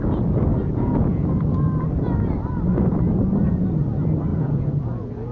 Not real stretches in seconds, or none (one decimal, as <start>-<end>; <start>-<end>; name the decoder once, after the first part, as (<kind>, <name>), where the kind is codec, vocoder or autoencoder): 0.5-1.3 (vocoder, Vocos); 4.3-5.3